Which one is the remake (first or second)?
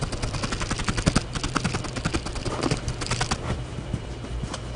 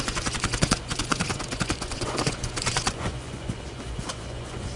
second